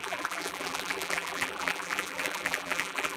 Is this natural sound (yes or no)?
no